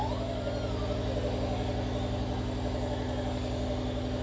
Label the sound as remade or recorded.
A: recorded